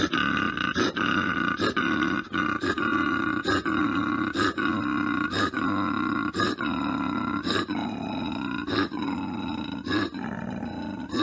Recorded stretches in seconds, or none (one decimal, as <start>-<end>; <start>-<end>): 0.0-11.2